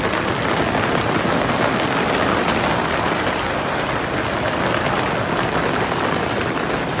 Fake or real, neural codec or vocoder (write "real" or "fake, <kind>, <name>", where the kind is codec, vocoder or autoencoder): real